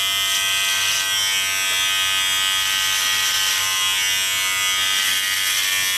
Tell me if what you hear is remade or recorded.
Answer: recorded